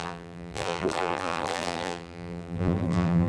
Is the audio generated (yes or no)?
yes